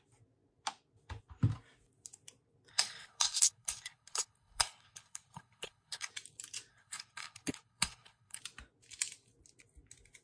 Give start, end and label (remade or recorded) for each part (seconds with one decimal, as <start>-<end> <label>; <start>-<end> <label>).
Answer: 0.0-2.7 recorded; 2.7-6.1 remade; 6.1-6.7 recorded; 6.7-8.4 remade; 8.4-10.2 recorded